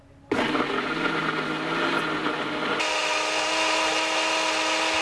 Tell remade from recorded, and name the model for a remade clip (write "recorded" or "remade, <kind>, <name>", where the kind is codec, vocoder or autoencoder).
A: recorded